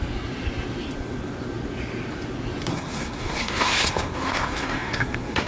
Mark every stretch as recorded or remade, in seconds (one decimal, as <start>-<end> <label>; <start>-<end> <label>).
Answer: 0.0-2.7 recorded; 2.7-5.5 remade